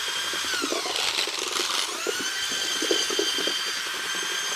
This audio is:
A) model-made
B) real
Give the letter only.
A